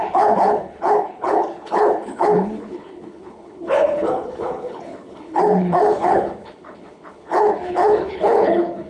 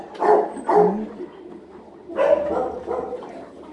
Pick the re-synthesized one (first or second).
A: first